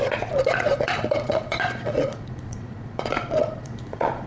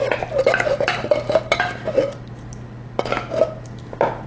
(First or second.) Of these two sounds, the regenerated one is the first